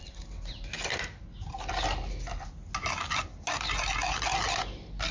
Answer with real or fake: real